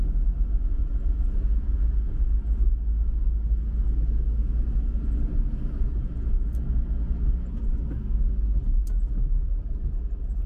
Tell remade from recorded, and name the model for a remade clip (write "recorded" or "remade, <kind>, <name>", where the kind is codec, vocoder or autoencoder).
recorded